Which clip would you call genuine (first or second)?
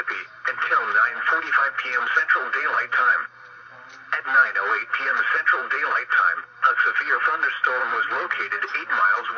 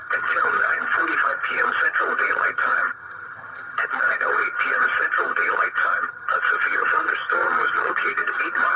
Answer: first